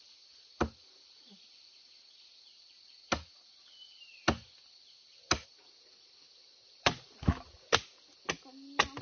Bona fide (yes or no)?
yes